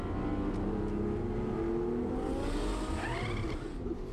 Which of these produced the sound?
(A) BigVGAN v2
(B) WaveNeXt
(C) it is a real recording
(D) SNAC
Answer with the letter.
C